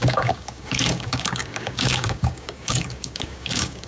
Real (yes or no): no